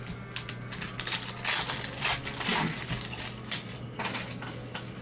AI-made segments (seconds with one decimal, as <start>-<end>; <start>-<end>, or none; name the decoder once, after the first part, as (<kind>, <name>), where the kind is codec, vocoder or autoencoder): none